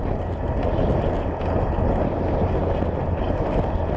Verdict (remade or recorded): recorded